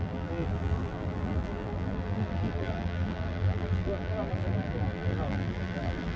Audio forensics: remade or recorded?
remade